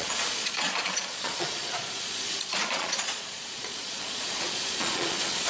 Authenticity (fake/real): fake